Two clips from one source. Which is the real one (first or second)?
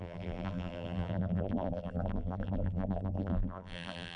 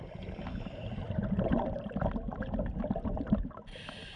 second